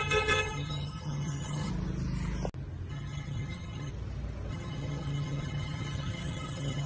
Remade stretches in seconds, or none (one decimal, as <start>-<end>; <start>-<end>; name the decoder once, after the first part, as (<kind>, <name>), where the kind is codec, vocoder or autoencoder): 0.0-1.7 (vocoder, HiFi-GAN); 2.9-3.9; 4.5-6.9